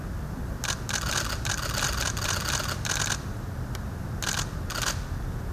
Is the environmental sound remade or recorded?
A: recorded